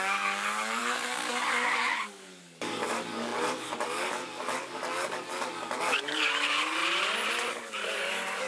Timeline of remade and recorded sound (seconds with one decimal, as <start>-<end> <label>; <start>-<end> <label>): 0.0-6.8 remade; 6.8-7.5 recorded; 7.5-8.5 remade